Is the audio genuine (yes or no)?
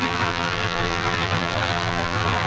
no